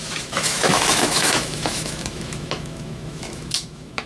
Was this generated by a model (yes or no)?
yes